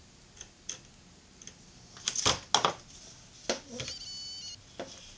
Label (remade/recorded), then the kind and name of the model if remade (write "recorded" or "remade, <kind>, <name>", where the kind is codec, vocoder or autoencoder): recorded